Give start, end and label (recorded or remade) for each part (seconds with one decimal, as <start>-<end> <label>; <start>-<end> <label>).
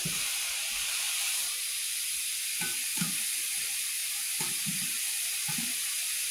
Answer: 0.0-2.3 remade; 2.3-3.6 recorded; 3.6-4.0 remade; 4.0-4.5 recorded; 4.5-6.3 remade